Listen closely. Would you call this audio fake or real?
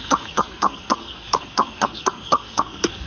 fake